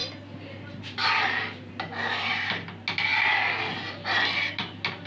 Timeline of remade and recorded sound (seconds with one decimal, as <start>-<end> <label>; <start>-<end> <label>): 0.0-5.1 recorded